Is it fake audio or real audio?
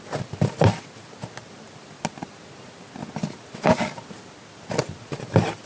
real